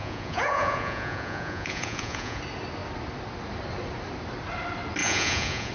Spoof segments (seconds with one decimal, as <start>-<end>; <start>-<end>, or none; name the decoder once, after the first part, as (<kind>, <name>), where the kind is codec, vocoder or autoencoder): 0.0-2.4 (vocoder, Vocos); 5.0-5.7